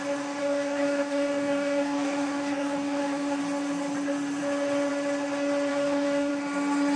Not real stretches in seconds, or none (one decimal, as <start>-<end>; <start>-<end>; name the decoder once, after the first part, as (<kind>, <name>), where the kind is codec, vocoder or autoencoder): 0.4-3.4 (codec, DAC); 5.7-6.3

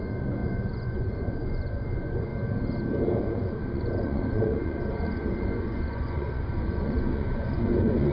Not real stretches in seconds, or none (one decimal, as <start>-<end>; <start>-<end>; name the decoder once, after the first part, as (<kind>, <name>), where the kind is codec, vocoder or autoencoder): 0.0-2.3 (vocoder, Vocos); 3.2-8.1

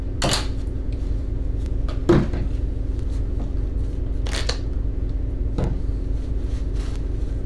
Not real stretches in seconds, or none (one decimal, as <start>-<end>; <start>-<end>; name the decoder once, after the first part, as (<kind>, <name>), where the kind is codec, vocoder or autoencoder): none

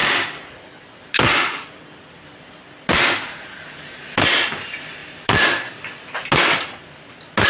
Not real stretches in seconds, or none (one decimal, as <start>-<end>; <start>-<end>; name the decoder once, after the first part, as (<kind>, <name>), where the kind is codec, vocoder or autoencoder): none